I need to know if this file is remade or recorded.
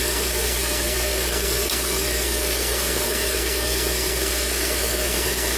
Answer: remade